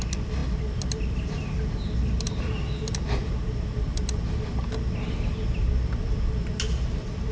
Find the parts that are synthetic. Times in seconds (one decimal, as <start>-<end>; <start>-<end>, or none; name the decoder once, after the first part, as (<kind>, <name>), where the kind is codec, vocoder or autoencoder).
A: none